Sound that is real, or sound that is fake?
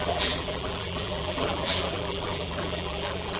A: fake